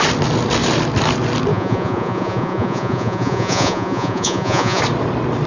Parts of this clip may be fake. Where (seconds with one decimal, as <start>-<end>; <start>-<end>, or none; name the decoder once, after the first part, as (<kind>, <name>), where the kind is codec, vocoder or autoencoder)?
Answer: 1.5-4.8 (vocoder, Vocos)

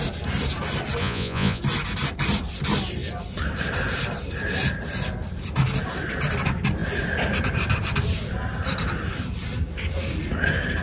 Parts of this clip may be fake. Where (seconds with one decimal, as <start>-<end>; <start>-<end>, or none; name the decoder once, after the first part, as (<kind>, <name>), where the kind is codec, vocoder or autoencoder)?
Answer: 1.0-1.6 (vocoder, Vocos)

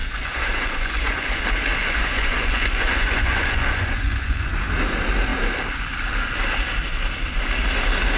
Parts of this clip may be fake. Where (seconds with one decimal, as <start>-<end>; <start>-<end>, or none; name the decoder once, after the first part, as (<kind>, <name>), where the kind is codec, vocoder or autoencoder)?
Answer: 0.0-1.4 (vocoder, Vocos); 1.8-4.5

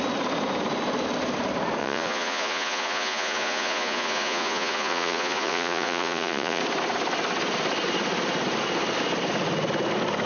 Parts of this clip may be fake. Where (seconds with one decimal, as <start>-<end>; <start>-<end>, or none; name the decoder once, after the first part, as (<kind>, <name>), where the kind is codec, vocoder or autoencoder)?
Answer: 1.8-6.6 (vocoder, Vocos)

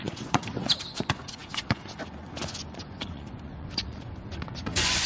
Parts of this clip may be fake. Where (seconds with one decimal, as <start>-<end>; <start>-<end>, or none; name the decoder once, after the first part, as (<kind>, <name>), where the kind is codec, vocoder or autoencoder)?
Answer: 0.0-5.1 (vocoder, Vocos)

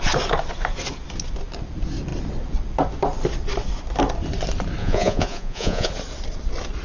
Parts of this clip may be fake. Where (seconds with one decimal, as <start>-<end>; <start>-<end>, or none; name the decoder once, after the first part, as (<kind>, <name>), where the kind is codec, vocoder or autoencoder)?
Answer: 4.8-5.9 (vocoder, Vocos)